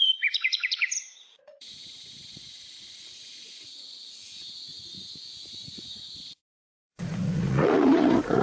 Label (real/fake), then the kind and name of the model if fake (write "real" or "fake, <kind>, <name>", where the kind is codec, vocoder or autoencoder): fake, vocoder, Vocos